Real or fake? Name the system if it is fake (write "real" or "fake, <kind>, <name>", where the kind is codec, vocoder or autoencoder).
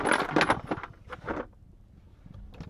real